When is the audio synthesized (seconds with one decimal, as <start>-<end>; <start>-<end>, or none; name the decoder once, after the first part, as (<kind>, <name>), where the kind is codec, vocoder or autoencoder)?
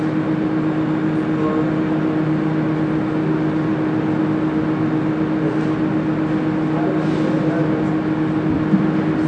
none